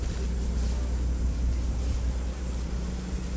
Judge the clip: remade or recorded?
recorded